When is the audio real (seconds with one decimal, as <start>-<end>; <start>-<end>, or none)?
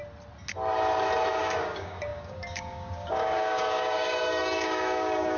0.0-1.3